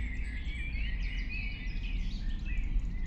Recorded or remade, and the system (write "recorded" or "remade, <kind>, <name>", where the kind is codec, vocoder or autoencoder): recorded